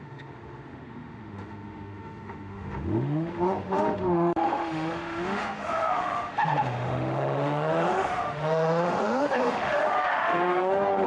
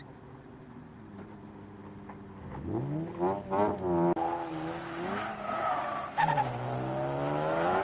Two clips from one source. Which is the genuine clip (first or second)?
second